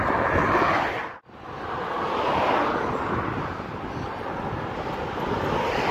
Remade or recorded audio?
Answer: recorded